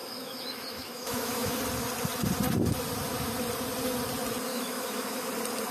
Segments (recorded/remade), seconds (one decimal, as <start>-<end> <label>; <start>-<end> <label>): 0.0-1.6 remade; 1.6-4.5 recorded; 4.5-5.3 remade; 5.3-5.7 recorded